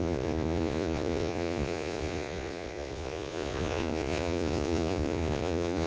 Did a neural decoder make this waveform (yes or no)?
yes